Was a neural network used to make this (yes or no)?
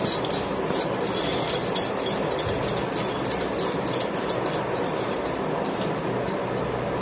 no